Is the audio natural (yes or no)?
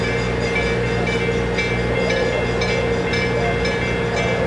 yes